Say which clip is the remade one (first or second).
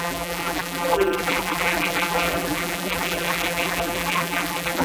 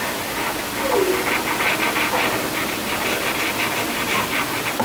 first